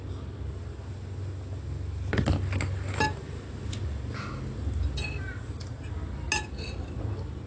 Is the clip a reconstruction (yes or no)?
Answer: no